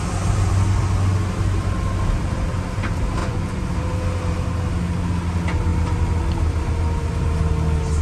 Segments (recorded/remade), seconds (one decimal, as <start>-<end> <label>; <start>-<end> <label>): 0.0-3.2 recorded; 3.2-3.7 remade; 3.7-8.0 recorded